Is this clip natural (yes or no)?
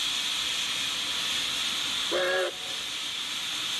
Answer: yes